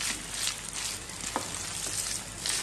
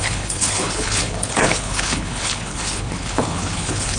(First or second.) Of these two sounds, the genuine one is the first